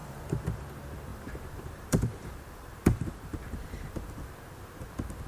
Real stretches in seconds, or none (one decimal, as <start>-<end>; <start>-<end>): 0.7-1.1; 4.3-5.3

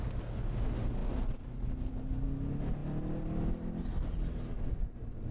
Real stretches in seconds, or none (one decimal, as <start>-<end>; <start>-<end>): 0.0-4.5

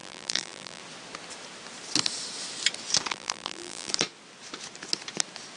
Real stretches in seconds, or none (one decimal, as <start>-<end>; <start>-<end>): 0.8-3.1; 3.9-5.6

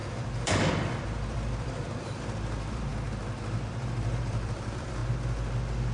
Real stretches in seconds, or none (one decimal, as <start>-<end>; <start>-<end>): 2.9-3.6; 5.0-5.9

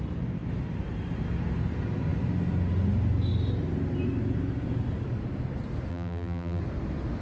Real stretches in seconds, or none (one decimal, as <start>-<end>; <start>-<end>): 0.0-5.9; 6.6-7.2

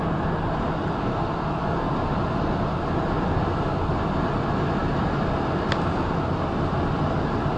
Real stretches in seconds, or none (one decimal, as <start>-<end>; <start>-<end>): 0.0-7.6

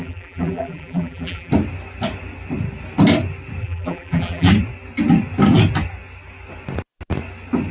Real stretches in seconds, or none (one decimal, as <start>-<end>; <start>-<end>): 1.5-3.6; 4.5-7.7